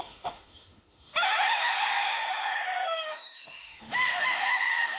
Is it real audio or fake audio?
fake